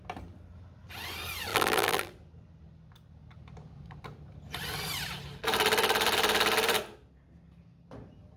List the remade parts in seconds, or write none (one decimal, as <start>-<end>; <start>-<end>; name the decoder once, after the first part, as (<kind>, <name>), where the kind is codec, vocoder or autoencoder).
1.5-2.1 (vocoder, BigVGAN v2)